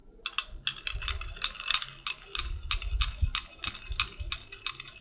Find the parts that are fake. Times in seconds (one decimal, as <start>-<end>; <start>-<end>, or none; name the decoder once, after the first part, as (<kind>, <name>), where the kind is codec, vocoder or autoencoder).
none